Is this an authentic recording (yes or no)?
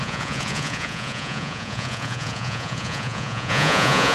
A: no